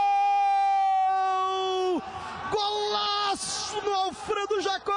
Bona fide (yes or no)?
yes